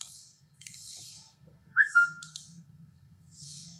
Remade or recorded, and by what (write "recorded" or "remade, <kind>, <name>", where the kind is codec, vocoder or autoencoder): remade, codec, SNAC